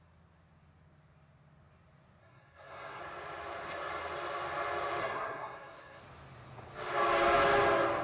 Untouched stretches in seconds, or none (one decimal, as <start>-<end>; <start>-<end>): 0.0-2.2; 3.0-5.0; 6.0-8.0